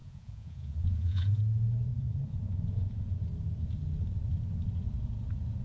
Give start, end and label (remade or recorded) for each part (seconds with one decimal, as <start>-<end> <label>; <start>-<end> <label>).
0.0-1.4 remade; 1.4-1.9 recorded; 1.9-3.2 remade; 3.2-5.6 recorded